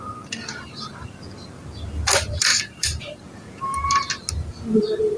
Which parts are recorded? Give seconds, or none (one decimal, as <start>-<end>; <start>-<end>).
0.0-2.5; 3.2-5.2